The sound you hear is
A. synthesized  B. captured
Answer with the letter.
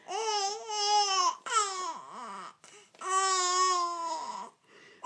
B